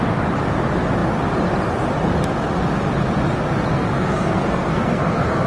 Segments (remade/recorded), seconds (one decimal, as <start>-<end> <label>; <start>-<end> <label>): 0.0-3.7 recorded; 3.7-5.5 remade